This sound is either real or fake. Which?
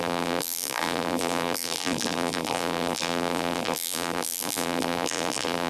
fake